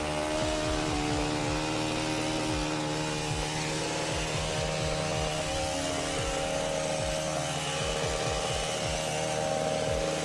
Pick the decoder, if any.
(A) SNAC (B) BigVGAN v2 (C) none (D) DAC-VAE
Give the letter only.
C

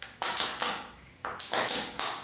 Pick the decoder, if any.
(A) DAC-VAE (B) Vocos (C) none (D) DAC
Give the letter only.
D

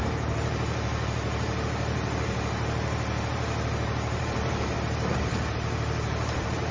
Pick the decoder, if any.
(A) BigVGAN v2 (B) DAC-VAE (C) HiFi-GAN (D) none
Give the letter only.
A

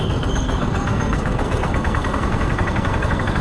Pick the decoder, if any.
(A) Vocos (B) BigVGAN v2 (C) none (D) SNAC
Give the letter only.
D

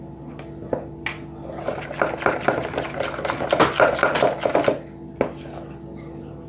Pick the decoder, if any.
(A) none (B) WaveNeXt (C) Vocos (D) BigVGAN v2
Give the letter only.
A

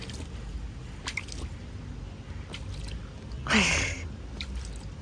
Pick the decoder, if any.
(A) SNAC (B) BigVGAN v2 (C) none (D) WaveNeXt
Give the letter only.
C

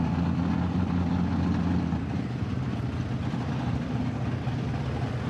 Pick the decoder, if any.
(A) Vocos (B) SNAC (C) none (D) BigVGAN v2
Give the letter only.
C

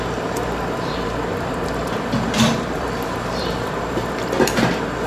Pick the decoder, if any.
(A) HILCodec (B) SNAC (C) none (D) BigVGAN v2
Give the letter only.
D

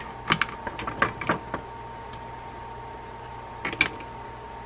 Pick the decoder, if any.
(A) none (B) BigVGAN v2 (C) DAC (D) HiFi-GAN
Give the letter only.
A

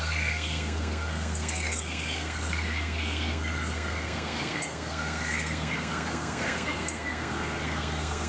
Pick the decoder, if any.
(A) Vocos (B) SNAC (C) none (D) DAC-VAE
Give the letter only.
B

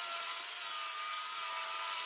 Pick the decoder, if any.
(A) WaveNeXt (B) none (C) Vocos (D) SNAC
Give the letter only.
B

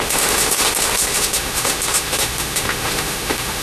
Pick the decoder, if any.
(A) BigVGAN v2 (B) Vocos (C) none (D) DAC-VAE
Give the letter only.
D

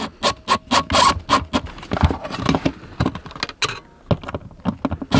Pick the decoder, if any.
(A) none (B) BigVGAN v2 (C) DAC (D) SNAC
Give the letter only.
A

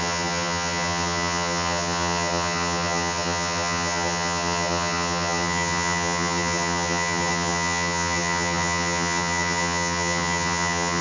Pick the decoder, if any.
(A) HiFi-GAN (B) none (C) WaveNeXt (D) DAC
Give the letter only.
A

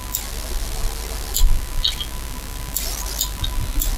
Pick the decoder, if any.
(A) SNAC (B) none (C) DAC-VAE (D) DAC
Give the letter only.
B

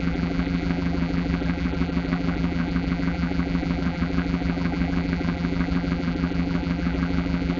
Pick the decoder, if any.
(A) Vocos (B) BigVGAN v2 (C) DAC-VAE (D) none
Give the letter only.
B